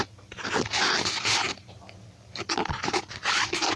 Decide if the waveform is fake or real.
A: real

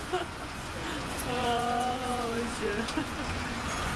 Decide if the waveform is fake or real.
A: fake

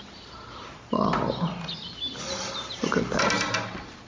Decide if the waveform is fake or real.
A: real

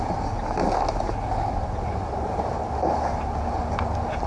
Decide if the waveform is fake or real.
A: real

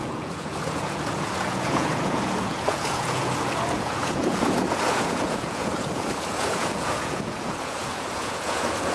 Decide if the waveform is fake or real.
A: fake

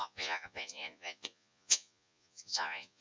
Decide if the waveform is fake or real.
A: fake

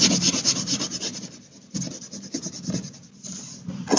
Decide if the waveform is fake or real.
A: real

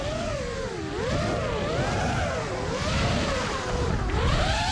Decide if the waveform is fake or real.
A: real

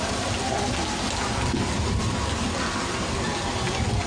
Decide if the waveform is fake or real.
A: real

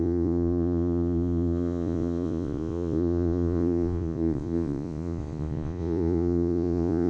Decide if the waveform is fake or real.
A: fake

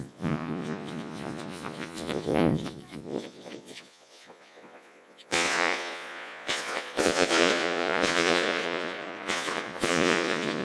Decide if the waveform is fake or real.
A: fake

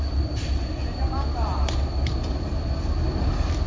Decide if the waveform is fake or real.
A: real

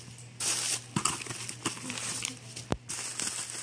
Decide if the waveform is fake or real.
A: real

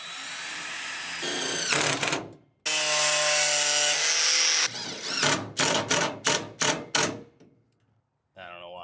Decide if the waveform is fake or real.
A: real